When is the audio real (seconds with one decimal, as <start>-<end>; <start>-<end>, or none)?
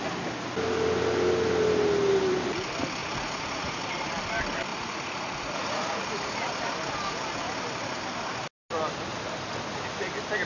0.0-3.0; 3.8-4.7; 6.3-10.5